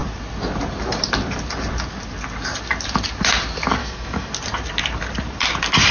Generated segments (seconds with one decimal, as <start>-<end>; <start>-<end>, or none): 3.8-4.3